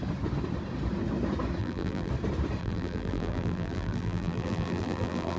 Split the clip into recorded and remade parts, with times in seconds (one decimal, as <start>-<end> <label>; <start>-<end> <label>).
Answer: 0.0-1.6 recorded; 1.6-2.1 remade; 2.1-2.6 recorded; 2.6-5.4 remade